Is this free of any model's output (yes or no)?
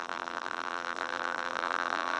no